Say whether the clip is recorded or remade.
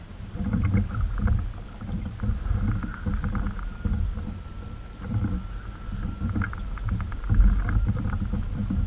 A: recorded